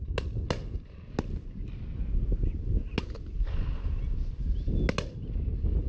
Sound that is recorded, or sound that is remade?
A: recorded